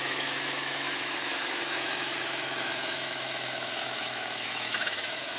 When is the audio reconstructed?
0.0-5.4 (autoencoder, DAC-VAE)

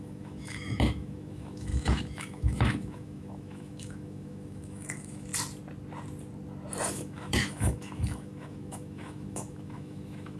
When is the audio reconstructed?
0.0-5.3 (autoencoder, DAC-VAE); 6.9-10.4

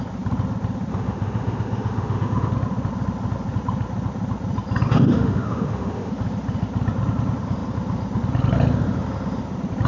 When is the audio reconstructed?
0.9-2.5 (autoencoder, DAC-VAE); 4.9-6.1

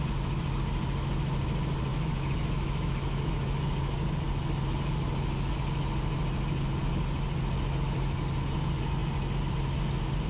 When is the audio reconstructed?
1.9-3.7 (autoencoder, DAC-VAE)

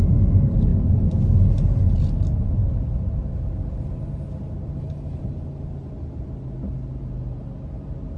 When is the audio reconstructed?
none

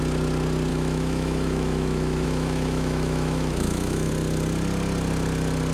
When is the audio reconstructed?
0.7-4.1 (autoencoder, DAC-VAE)